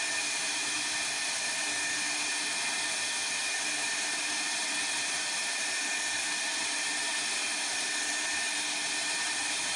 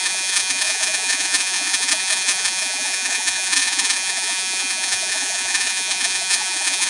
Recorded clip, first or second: first